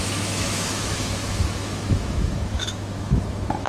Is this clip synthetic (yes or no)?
yes